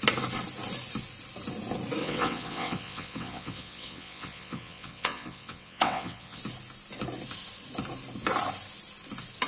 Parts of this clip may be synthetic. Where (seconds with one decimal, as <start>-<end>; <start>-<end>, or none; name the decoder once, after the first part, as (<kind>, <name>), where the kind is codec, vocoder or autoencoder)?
2.0-6.4 (vocoder, WaveNeXt)